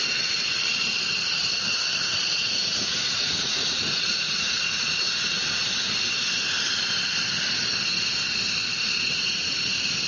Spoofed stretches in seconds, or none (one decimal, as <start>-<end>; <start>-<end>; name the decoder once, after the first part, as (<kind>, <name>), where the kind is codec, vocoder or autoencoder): 2.2-5.1 (vocoder, Vocos)